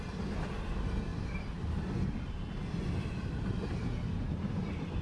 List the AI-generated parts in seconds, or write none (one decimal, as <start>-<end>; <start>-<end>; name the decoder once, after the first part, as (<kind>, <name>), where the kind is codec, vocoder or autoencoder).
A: none